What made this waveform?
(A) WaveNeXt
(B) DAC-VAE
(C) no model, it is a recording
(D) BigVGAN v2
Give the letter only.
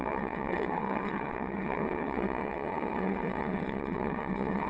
A